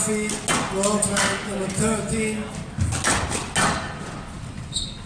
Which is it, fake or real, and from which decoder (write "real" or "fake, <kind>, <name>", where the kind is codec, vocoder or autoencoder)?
real